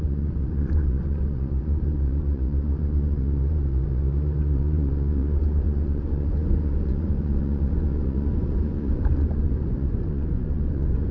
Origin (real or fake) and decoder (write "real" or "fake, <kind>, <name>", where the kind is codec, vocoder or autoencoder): fake, vocoder, Vocos